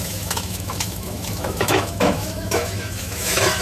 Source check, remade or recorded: remade